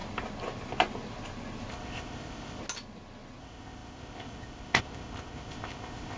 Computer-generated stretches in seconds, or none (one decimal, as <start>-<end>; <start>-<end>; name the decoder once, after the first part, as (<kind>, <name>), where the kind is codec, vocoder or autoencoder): 1.7-2.6 (codec, ZipCodec); 3.4-6.2